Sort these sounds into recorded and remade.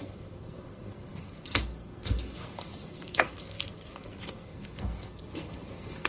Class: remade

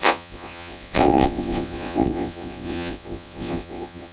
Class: remade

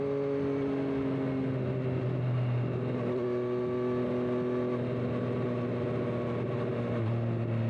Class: recorded